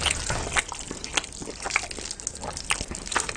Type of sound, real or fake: real